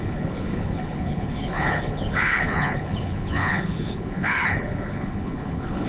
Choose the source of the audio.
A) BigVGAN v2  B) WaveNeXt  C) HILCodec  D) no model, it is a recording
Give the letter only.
C